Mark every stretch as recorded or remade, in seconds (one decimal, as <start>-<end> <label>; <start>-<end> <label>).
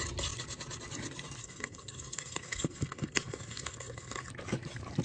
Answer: 0.0-1.4 recorded; 1.4-4.3 remade; 4.3-5.0 recorded